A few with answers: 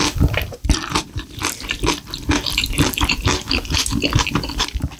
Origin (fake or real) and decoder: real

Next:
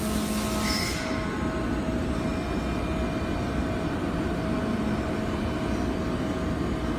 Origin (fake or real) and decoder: real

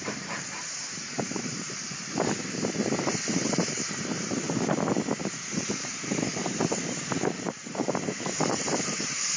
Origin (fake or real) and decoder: fake, vocoder, BigVGAN v2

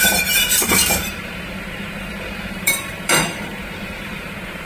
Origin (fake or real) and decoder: fake, vocoder, BigVGAN v2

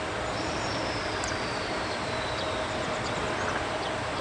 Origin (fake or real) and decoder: fake, vocoder, BigVGAN v2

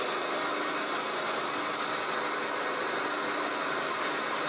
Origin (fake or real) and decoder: real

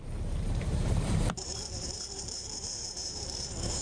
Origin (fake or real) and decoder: fake, vocoder, BigVGAN v2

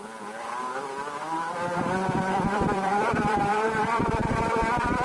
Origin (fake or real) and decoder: fake, vocoder, BigVGAN v2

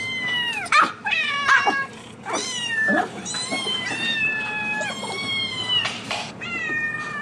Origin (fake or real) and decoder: fake, vocoder, BigVGAN v2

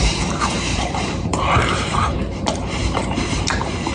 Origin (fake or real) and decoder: fake, vocoder, BigVGAN v2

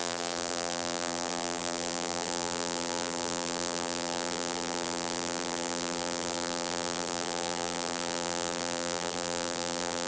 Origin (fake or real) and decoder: fake, vocoder, BigVGAN v2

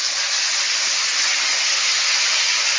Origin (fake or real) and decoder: real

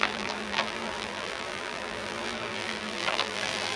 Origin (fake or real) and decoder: fake, vocoder, BigVGAN v2